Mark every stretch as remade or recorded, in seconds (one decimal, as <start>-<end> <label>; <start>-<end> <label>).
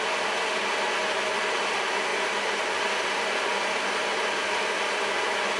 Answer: 0.0-5.6 recorded